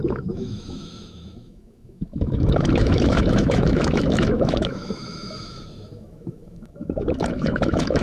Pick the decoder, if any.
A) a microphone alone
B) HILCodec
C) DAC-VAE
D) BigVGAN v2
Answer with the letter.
C